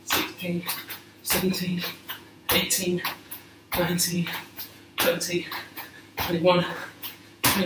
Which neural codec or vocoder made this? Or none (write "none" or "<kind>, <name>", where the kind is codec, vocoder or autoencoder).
vocoder, Vocos